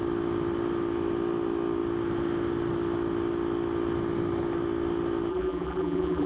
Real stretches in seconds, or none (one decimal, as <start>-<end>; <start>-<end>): 0.0-5.3